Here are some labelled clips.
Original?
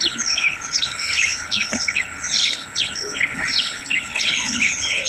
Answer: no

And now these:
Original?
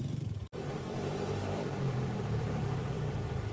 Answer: no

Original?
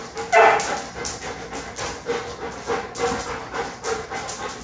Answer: yes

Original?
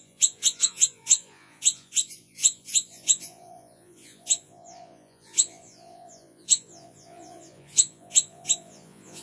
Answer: no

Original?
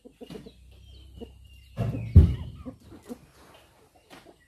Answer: yes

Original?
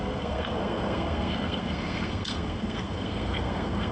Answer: no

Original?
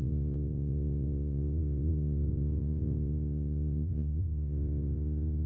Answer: no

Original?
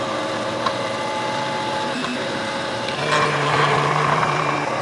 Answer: no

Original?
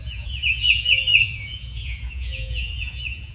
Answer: no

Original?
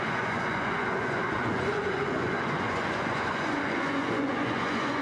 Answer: no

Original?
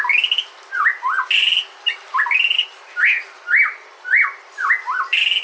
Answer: yes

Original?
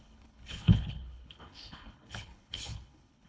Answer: no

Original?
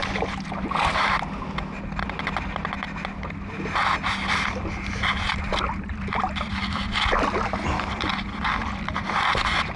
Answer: yes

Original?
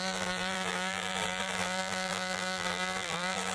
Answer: no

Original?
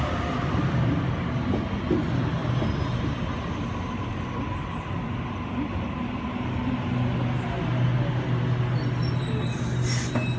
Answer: yes